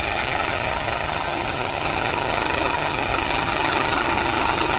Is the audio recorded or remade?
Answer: remade